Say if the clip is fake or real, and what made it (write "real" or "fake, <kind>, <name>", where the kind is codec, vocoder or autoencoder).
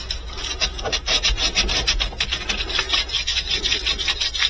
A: real